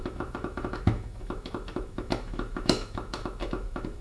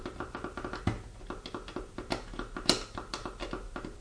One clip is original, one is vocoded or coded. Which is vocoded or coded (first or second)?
first